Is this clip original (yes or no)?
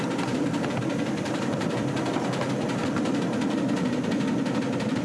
no